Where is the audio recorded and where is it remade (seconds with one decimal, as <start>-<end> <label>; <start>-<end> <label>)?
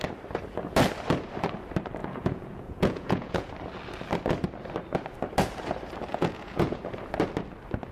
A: 0.0-2.0 recorded; 2.0-3.5 remade; 3.5-6.1 recorded; 6.1-6.8 remade; 6.8-7.9 recorded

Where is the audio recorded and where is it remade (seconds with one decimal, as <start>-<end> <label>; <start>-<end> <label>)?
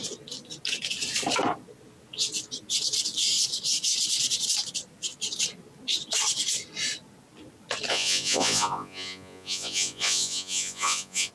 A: 0.0-7.9 recorded; 7.9-11.3 remade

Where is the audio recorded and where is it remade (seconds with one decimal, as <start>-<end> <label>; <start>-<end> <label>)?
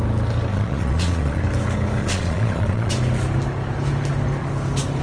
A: 0.0-0.5 recorded; 0.5-1.4 remade; 1.4-2.0 recorded; 2.0-2.9 remade; 2.9-5.0 recorded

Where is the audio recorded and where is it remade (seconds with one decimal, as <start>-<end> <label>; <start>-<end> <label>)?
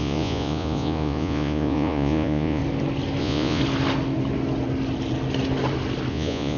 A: 0.0-2.6 remade; 2.6-3.2 recorded; 3.2-3.6 remade; 3.6-6.1 recorded; 6.1-6.6 remade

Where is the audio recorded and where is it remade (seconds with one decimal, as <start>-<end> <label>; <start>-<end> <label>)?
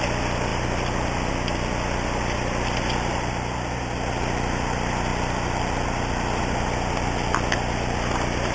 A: 0.0-8.5 recorded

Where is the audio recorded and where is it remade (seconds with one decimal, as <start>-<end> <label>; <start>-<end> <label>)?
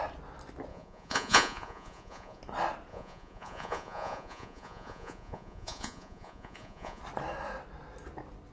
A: 0.0-0.7 recorded; 0.7-2.4 remade; 2.4-2.9 recorded; 2.9-7.0 remade; 7.0-8.5 recorded